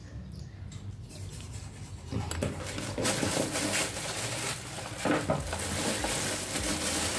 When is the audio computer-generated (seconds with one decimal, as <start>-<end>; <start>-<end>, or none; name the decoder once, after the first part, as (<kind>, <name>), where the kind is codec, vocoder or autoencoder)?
none